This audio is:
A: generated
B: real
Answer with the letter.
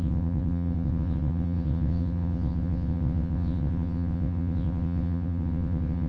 A